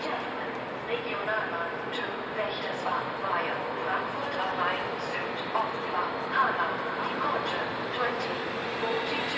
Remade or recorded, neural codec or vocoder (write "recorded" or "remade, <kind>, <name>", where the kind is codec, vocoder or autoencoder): recorded